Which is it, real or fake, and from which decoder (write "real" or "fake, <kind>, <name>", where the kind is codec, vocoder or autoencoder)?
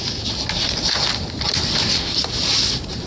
real